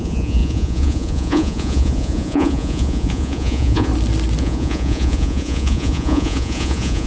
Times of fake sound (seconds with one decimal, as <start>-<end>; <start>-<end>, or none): 0.0-3.9; 4.4-7.1